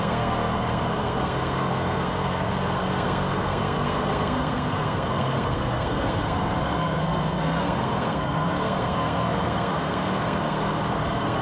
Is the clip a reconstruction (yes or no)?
yes